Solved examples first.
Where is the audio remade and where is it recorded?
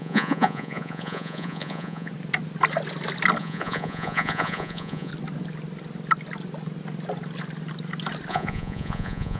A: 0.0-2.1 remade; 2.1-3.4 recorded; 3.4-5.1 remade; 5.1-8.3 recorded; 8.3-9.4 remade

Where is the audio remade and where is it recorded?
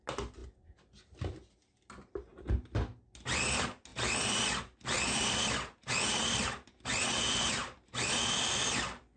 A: 0.0-9.2 recorded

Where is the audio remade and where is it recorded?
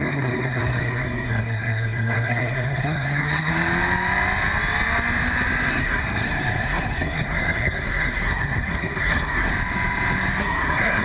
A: 0.0-3.5 remade; 3.5-5.7 recorded; 5.7-9.5 remade; 9.5-10.4 recorded; 10.4-11.0 remade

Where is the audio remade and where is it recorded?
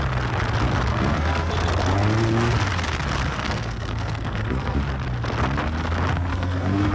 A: 0.0-0.9 recorded; 0.9-1.5 remade; 1.5-3.3 recorded; 3.3-4.8 remade; 4.8-6.3 recorded; 6.3-6.9 remade